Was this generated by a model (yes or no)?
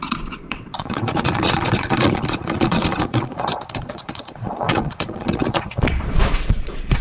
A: yes